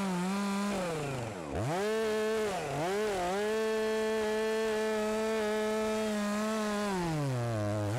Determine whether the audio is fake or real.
real